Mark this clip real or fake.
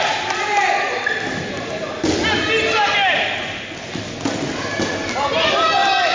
real